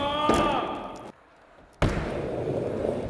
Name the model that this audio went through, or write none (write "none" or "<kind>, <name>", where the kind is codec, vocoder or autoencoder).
none